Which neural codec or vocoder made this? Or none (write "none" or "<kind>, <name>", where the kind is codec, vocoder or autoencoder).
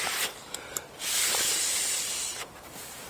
vocoder, BigVGAN v2